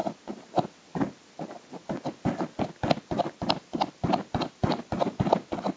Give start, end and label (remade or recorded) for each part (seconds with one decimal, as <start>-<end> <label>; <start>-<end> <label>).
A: 0.0-5.8 recorded